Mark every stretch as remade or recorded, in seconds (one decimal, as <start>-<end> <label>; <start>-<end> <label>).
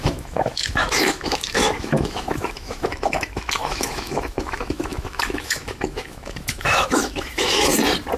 0.0-7.7 remade; 7.7-8.2 recorded